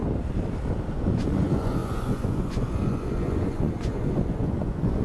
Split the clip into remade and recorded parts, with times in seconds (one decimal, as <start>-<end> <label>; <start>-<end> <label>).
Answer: 0.0-0.9 recorded; 0.9-5.0 remade